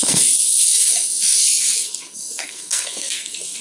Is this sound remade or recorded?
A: remade